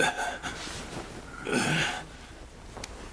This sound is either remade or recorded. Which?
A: recorded